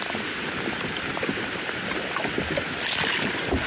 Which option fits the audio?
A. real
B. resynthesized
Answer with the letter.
B